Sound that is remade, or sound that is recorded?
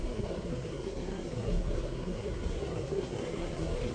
remade